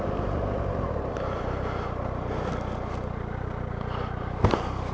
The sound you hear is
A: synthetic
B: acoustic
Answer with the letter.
B